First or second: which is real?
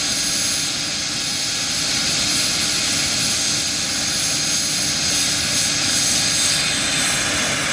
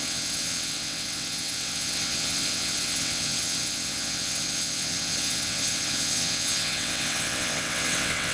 first